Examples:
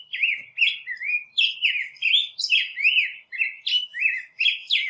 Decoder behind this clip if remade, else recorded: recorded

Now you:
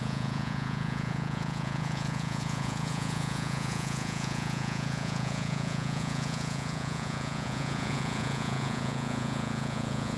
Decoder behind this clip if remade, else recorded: remade, vocoder, Vocos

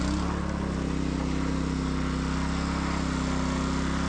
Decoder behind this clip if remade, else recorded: recorded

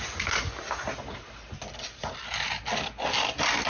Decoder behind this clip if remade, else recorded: recorded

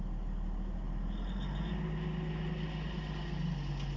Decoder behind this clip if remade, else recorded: recorded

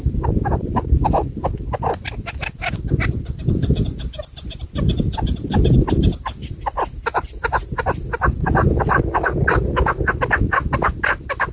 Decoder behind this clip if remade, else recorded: recorded